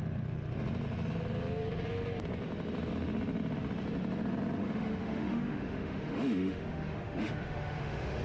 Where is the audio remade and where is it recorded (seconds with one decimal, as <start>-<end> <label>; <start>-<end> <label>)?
0.0-4.6 recorded; 4.6-8.2 remade